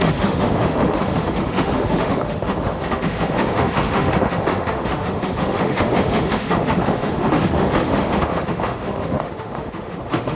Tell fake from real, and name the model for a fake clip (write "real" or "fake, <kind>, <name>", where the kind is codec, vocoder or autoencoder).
fake, autoencoder, DAC-VAE